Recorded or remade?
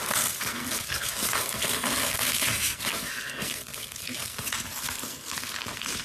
remade